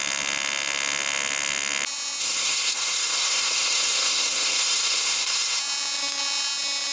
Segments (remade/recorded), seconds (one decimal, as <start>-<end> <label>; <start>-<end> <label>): 0.0-2.2 recorded; 2.2-5.6 remade; 5.6-6.9 recorded